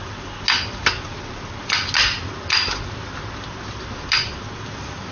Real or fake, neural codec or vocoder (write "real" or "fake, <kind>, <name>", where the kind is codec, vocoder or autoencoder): real